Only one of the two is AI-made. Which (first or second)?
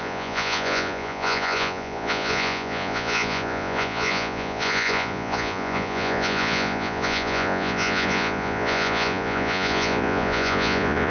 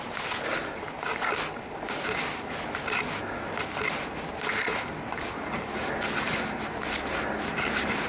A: first